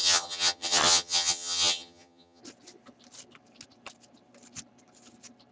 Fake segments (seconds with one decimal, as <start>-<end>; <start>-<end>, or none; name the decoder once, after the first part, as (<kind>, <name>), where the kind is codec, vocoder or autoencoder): 0.0-2.4 (vocoder, HiFi-GAN)